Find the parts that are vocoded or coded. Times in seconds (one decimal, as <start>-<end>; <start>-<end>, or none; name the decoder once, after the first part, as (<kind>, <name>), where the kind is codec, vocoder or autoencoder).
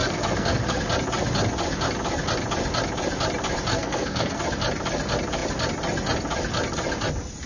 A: 0.0-0.8 (codec, SNAC); 3.7-4.4